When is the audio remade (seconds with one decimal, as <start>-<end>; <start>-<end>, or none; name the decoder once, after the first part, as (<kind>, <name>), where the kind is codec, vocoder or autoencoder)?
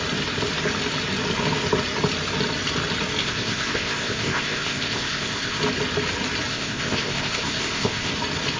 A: 3.2-5.6 (codec, ZipCodec); 6.5-8.1